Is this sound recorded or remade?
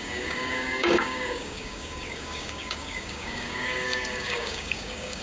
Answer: remade